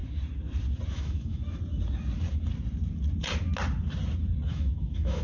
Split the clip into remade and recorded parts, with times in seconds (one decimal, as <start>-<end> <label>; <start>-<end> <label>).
0.0-0.9 recorded; 0.9-1.4 remade; 1.4-4.5 recorded; 4.5-5.2 remade